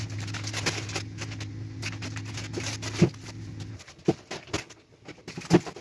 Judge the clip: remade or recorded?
recorded